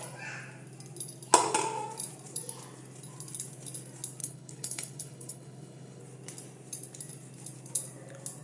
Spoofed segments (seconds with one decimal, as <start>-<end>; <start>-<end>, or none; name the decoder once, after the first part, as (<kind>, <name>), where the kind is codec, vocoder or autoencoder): 4.2-6.0 (codec, HILCodec)